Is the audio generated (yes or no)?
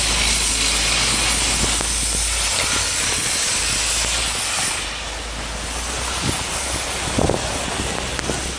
no